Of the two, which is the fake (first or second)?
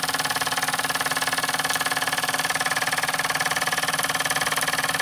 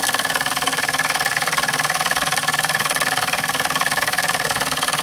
second